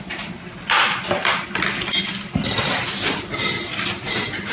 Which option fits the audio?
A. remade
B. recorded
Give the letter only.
B